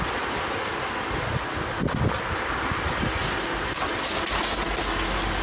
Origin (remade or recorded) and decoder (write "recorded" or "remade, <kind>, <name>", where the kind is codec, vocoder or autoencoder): recorded